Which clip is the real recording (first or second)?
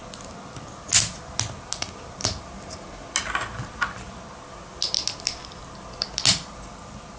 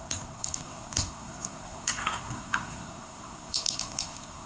first